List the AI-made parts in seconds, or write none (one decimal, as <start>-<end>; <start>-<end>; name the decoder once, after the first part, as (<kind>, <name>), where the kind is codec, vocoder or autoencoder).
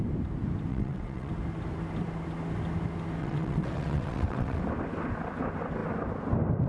0.7-1.3 (vocoder, WaveNeXt); 3.2-4.6